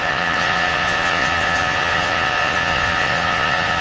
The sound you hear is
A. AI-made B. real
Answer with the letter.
A